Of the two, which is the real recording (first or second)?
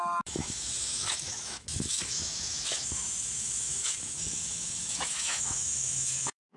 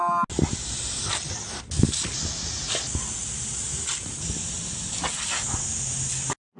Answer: second